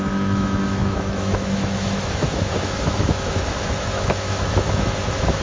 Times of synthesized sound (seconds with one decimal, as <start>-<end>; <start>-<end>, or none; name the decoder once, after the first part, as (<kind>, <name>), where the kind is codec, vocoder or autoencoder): 0.0-5.4 (autoencoder, DAC-VAE)